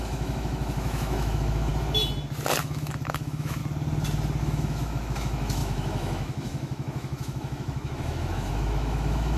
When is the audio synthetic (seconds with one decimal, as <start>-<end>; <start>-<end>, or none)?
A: 0.0-1.7; 2.6-3.6; 4.4-9.4